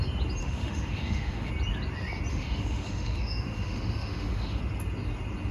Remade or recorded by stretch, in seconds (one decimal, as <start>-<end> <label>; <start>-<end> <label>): 0.0-0.4 recorded; 0.4-1.5 remade; 1.5-2.3 recorded; 2.3-4.6 remade; 4.6-5.5 recorded